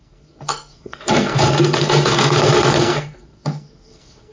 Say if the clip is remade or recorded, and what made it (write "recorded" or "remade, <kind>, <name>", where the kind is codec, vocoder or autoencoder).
remade, codec, SNAC